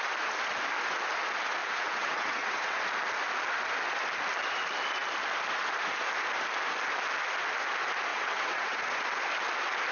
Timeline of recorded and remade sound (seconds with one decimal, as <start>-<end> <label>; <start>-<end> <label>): 0.0-1.6 recorded; 1.6-2.8 remade; 2.8-8.1 recorded; 8.1-8.8 remade; 8.8-9.9 recorded